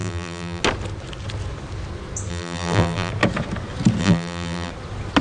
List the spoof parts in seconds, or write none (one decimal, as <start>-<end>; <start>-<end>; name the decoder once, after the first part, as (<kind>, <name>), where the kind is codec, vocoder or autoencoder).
0.0-0.6 (vocoder, BigVGAN v2); 2.3-3.1; 4.0-4.7